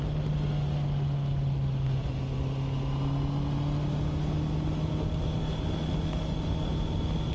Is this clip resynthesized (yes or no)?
no